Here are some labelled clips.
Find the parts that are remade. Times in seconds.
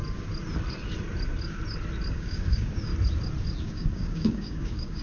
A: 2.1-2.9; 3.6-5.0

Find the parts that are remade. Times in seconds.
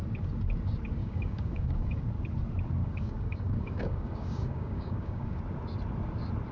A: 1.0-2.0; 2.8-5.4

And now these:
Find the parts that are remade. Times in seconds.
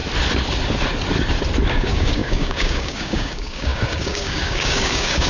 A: 1.7-5.3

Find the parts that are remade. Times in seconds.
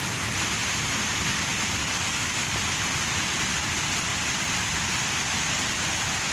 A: 1.8-2.5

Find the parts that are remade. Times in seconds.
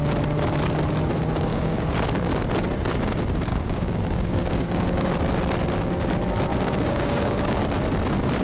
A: 1.5-2.3; 3.5-5.1; 6.5-7.6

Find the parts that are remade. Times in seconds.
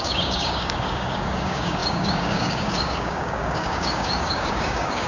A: 0.0-5.1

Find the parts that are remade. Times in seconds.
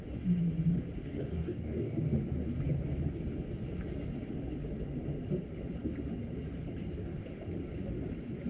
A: 1.0-2.0